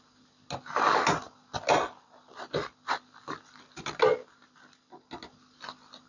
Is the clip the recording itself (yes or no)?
yes